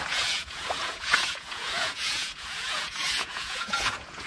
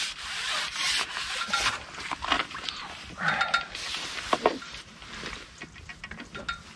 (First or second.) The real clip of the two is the second